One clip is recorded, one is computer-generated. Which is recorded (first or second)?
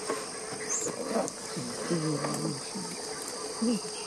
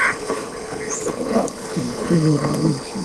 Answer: first